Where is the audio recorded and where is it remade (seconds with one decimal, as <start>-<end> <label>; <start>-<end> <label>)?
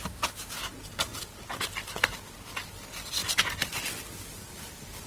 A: 0.0-1.1 recorded; 1.1-2.7 remade; 2.7-5.1 recorded